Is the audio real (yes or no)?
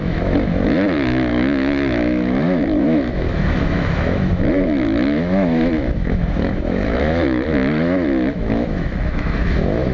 no